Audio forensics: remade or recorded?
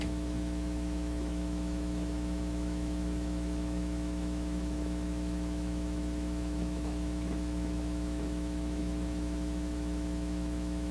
remade